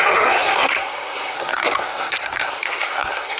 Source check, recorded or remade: remade